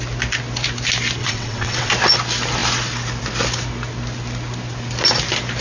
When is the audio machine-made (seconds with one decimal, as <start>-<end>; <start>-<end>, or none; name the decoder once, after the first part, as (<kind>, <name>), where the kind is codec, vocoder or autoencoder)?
1.2-1.9 (vocoder, WaveNeXt)